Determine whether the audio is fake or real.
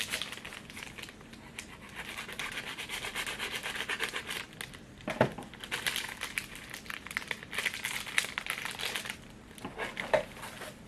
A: real